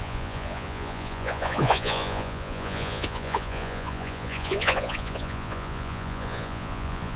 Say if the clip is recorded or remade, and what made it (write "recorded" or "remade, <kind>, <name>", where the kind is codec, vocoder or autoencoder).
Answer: remade, vocoder, Vocos